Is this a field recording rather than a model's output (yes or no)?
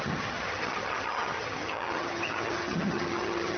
no